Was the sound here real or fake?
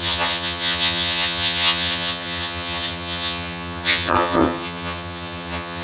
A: fake